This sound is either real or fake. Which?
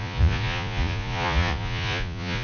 fake